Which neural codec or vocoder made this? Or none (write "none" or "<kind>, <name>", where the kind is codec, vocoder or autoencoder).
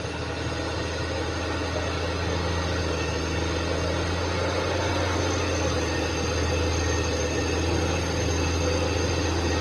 none